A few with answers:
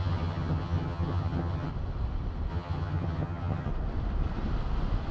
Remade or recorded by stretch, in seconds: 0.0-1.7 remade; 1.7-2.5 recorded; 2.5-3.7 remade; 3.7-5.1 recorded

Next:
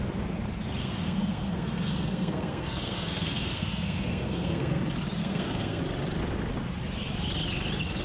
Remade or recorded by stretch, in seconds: 0.0-0.8 recorded; 0.8-4.8 remade; 4.8-5.2 recorded; 5.2-5.8 remade; 5.8-8.0 recorded

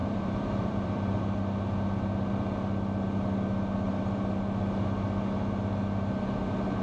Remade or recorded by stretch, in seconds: 0.0-1.2 remade; 1.2-6.8 recorded